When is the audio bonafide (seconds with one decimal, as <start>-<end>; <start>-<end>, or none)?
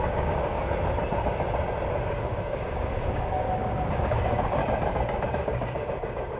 0.6-1.9; 4.6-5.3